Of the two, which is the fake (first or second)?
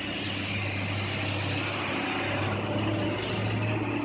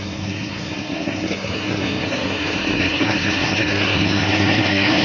second